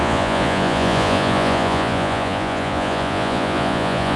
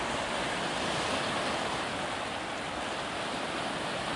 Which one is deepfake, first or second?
first